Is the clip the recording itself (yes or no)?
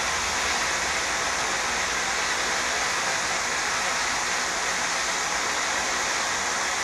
yes